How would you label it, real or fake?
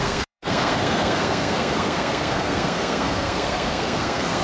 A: fake